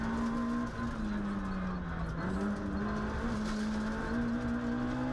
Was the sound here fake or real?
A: real